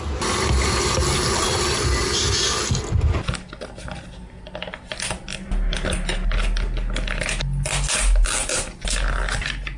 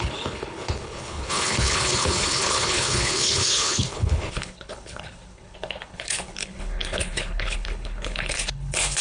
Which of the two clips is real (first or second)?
first